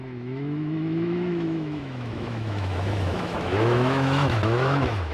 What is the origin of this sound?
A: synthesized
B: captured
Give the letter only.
A